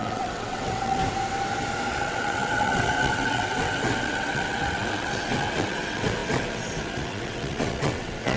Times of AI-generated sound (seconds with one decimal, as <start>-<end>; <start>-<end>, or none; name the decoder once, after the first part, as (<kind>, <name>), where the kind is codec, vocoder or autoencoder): 0.0-1.0 (vocoder, WaveNeXt); 1.9-8.4